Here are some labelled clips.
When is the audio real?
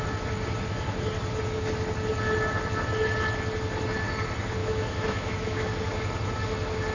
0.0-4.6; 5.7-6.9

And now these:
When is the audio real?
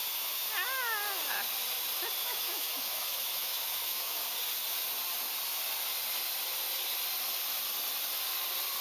0.5-2.2; 4.3-8.8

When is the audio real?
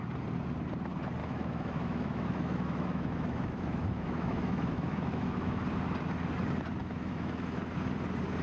0.0-1.2; 5.6-6.8; 7.6-8.4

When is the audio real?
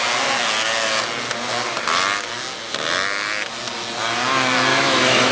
0.0-4.7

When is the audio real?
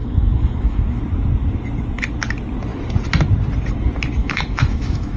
1.0-4.2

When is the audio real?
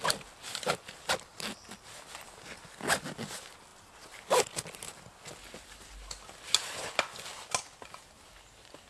0.0-8.9